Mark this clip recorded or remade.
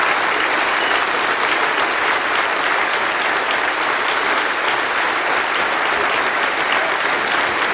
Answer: recorded